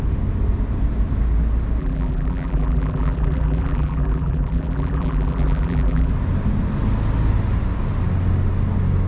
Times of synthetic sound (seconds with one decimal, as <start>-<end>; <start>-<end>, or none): 1.8-6.1